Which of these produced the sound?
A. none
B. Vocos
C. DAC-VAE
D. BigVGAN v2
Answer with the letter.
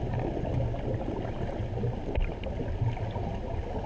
A